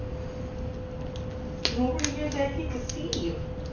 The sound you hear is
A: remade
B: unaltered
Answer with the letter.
B